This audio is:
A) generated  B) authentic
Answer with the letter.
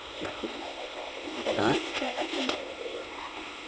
A